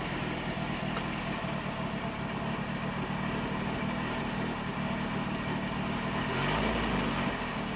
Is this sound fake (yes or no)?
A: no